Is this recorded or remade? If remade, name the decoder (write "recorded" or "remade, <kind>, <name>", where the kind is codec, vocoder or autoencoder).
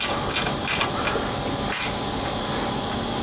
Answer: recorded